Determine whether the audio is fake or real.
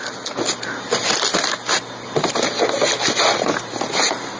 real